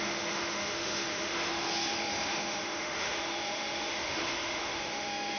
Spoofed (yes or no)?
yes